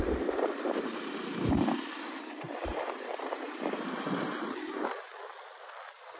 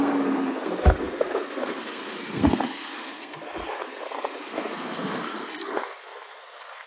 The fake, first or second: second